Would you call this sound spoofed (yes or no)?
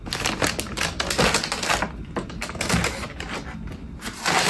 no